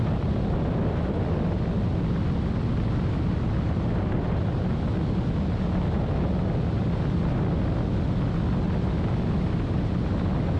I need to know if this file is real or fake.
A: real